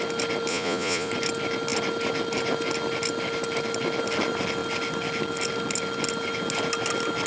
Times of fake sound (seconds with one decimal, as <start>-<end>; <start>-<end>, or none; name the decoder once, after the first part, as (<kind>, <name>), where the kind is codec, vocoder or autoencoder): 0.5-1.1 (vocoder, Vocos)